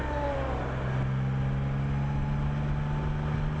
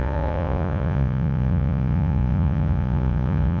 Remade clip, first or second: second